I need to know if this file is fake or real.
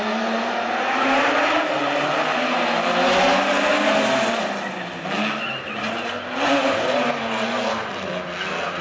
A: real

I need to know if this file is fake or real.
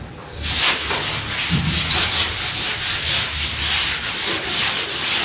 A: real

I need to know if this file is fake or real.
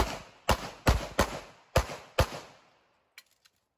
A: real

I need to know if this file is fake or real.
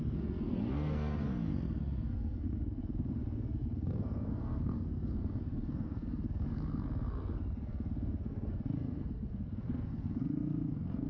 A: fake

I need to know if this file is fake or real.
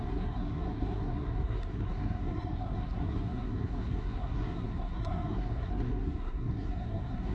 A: fake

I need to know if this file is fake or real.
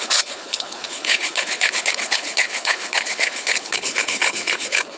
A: fake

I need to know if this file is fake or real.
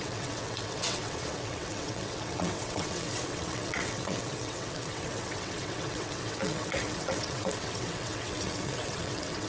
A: fake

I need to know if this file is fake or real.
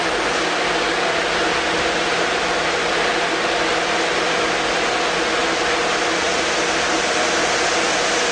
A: real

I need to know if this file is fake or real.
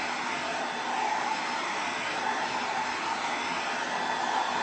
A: real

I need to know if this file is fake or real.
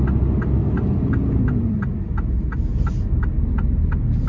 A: real